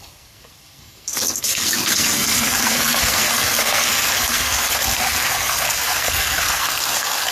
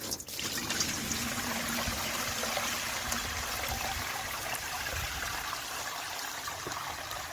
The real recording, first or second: second